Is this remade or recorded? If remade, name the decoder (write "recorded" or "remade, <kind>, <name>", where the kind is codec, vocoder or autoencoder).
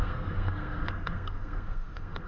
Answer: remade, codec, SNAC